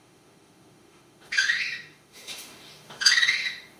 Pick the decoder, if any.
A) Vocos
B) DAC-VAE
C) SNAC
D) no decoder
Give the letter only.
B